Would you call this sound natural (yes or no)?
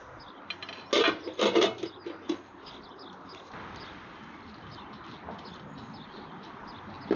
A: yes